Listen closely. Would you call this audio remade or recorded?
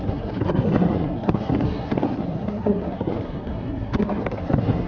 remade